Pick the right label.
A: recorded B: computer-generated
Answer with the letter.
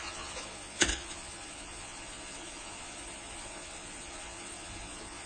B